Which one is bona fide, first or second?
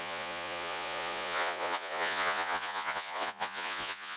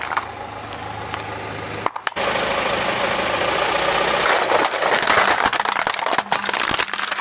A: second